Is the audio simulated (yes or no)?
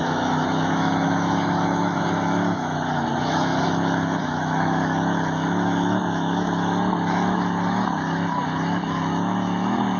yes